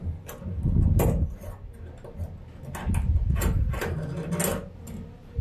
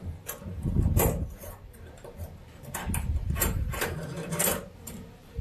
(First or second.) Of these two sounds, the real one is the first